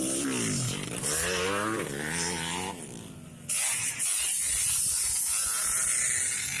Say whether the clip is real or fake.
real